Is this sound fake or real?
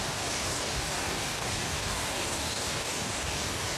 fake